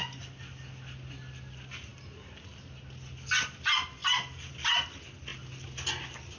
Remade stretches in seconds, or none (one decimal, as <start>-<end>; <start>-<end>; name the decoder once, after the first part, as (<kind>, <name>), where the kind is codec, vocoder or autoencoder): none